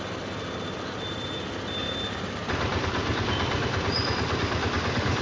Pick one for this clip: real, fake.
real